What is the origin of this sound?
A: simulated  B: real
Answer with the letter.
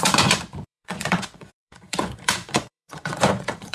A